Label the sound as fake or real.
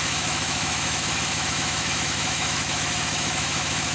fake